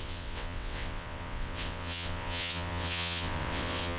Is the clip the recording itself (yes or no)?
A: no